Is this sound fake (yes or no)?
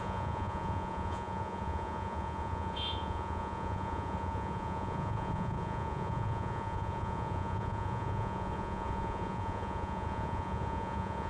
yes